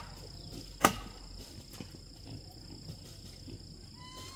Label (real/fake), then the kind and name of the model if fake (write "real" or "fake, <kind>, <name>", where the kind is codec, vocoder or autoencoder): real